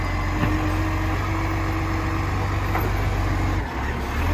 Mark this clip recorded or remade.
recorded